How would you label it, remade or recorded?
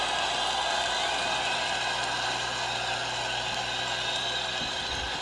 recorded